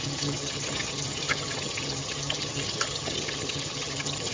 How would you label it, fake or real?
fake